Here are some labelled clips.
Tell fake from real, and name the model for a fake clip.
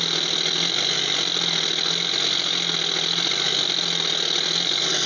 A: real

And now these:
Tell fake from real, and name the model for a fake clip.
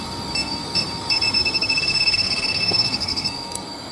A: fake, codec, SNAC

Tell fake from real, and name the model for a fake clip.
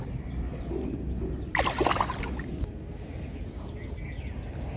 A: real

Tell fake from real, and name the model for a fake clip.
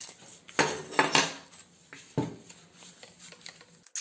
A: real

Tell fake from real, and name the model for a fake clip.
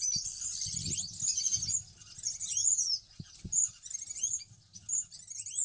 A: real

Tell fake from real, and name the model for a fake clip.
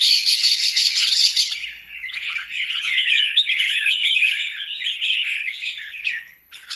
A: fake, codec, HILCodec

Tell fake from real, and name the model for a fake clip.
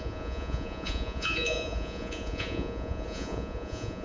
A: fake, vocoder, Vocos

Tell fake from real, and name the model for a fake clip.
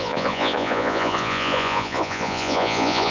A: fake, vocoder, Vocos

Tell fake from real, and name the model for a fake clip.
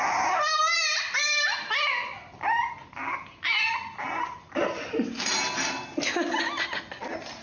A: real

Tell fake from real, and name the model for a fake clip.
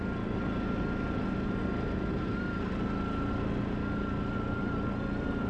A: real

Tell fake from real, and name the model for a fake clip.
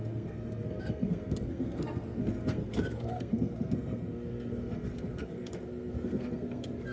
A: fake, codec, SNAC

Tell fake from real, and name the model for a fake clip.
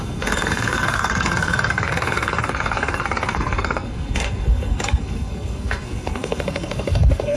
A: fake, codec, SNAC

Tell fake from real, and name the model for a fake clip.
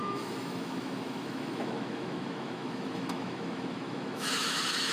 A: fake, autoencoder, DAC-VAE